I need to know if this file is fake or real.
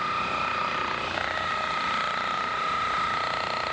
real